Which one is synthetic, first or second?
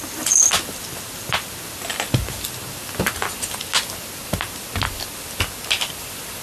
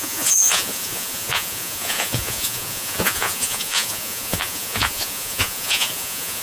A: second